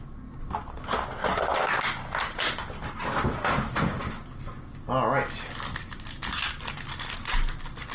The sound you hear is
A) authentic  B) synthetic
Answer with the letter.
A